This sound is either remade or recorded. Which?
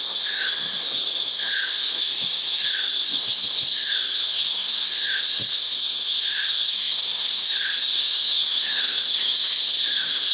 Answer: remade